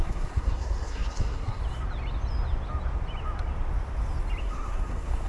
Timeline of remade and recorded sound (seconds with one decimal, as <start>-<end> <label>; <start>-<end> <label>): 0.0-1.6 remade; 1.6-4.4 recorded; 4.4-5.3 remade

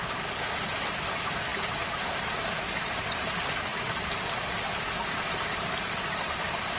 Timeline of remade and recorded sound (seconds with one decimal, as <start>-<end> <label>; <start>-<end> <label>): 0.0-6.8 recorded

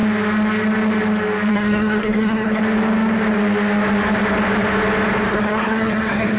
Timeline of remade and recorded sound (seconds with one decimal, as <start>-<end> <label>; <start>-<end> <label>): 0.0-1.5 recorded; 1.5-2.6 remade; 2.6-5.3 recorded; 5.3-6.4 remade

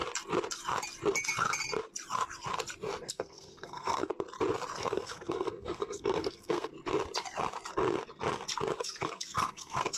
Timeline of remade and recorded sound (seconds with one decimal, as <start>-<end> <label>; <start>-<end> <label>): 0.0-3.1 recorded; 3.1-4.1 remade; 4.1-4.9 recorded; 4.9-6.7 remade; 6.7-8.8 recorded; 8.8-10.0 remade

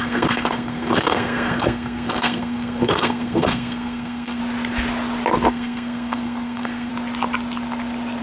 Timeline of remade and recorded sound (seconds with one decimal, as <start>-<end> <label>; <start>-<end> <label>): 0.0-4.4 remade; 4.4-5.5 recorded; 5.5-6.9 remade; 6.9-8.2 recorded

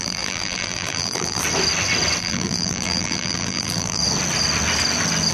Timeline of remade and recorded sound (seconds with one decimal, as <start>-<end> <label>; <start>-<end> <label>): 0.0-1.4 remade; 1.4-2.2 recorded; 2.2-4.0 remade; 4.0-5.3 recorded